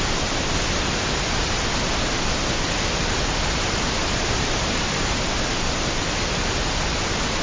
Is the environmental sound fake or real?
real